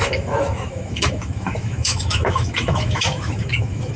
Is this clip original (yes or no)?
no